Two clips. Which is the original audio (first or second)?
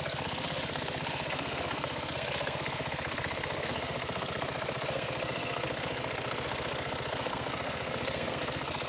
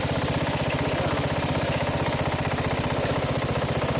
second